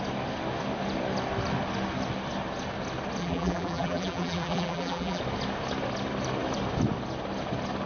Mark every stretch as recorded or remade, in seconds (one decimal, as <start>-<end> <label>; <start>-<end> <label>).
0.0-3.2 recorded; 3.2-5.2 remade; 5.2-7.9 recorded